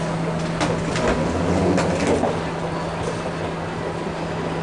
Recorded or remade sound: recorded